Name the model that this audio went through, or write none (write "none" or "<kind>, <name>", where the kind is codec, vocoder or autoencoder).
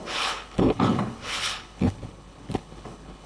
codec, HILCodec